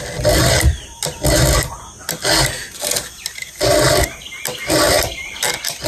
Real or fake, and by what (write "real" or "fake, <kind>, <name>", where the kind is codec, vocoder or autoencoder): real